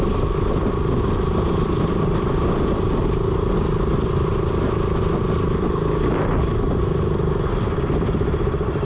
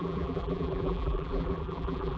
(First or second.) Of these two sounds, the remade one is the second